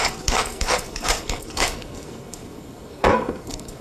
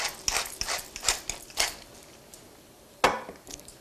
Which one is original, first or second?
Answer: second